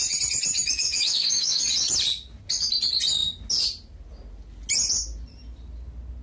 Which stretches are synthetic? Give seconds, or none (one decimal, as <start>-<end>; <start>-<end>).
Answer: 0.6-1.6